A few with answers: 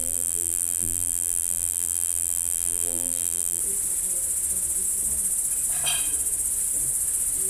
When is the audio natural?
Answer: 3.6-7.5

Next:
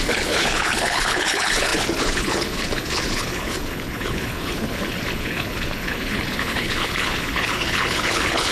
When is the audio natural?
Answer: none

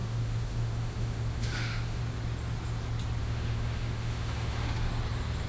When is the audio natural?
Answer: 2.0-3.2; 4.9-5.5

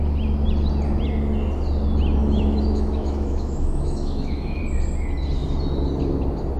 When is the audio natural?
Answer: 0.0-2.2; 4.6-6.6

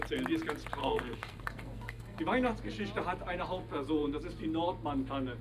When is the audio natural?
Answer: 0.0-0.8; 2.2-5.4